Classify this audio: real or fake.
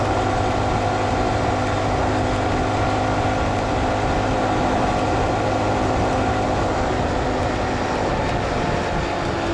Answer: real